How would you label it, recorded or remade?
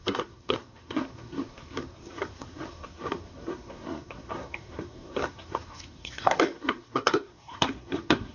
remade